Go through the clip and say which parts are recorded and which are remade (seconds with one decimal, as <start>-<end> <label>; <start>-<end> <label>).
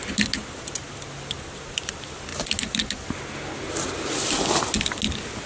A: 0.0-5.5 recorded